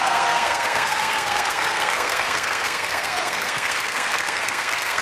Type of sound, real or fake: fake